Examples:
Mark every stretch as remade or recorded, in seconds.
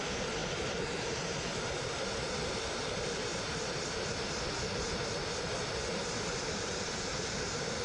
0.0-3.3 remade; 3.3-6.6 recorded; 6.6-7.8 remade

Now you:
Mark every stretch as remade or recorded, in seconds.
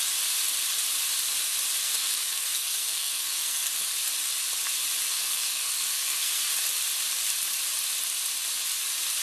0.0-1.8 recorded; 1.8-3.9 remade; 3.9-5.1 recorded; 5.1-6.5 remade; 6.5-9.2 recorded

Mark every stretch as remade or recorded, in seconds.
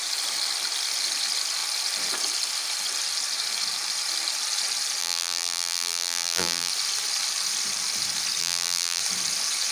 0.0-5.0 recorded; 5.0-6.7 remade; 6.7-8.4 recorded; 8.4-9.0 remade; 9.0-9.7 recorded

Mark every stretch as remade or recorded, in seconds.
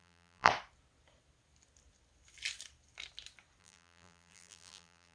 0.0-0.5 remade; 0.5-3.6 recorded; 3.6-5.1 remade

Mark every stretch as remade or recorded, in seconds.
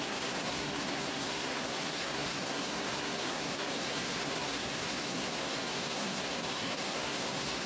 0.0-7.7 remade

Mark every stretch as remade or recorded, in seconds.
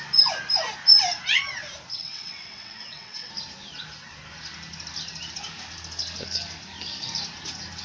0.0-1.9 recorded; 1.9-3.3 remade; 3.3-7.8 recorded